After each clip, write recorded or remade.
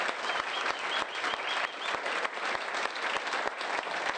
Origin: recorded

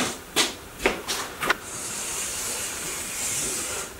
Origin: remade